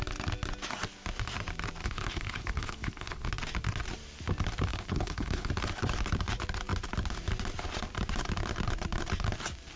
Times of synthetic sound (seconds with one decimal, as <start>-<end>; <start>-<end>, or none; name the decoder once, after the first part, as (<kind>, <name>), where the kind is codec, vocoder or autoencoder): 1.8-3.3 (codec, HILCodec); 4.7-5.5